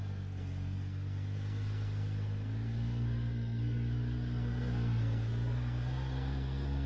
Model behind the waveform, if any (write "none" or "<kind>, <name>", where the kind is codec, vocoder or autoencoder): codec, SNAC